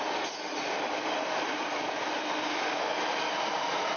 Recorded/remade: recorded